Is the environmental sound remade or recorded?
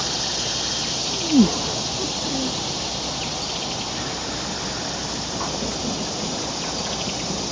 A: recorded